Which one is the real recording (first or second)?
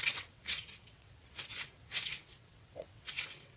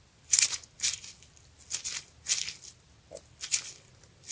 second